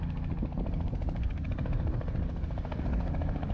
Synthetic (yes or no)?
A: yes